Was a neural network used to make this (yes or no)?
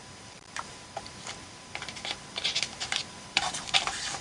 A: yes